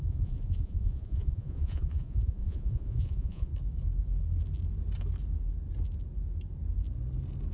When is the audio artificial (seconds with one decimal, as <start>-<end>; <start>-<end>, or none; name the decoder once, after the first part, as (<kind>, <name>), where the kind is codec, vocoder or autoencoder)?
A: 0.0-3.5 (vocoder, Vocos)